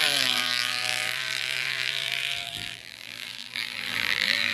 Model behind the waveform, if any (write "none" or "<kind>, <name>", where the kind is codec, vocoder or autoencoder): vocoder, BigVGAN v2